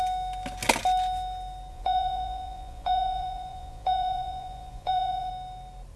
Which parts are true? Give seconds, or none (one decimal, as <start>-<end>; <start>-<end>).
0.0-1.7; 5.3-6.0